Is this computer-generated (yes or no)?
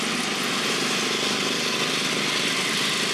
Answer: no